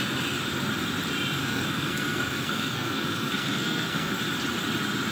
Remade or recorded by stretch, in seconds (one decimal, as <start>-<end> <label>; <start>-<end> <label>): 0.0-1.4 recorded; 1.4-4.2 remade; 4.2-5.1 recorded